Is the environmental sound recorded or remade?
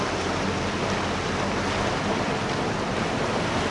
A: recorded